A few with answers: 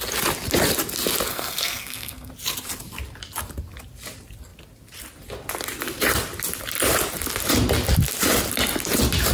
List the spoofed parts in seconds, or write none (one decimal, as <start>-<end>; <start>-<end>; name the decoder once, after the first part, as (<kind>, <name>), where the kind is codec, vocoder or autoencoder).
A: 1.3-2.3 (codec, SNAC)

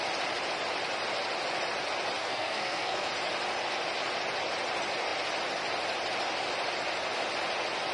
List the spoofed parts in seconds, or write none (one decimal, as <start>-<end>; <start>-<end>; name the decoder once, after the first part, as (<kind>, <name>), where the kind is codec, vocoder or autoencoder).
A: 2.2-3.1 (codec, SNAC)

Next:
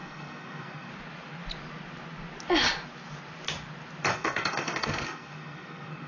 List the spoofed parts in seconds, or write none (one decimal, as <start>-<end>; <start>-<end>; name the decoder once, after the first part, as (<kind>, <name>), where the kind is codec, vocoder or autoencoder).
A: 0.0-0.9 (codec, SNAC); 4.1-6.1

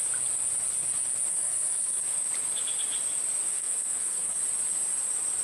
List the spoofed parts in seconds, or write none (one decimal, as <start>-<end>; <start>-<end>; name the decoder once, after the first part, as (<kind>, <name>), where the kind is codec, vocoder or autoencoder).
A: 1.3-2.3 (codec, SNAC); 3.5-4.4